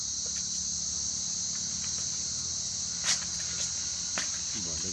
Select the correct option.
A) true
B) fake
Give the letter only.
A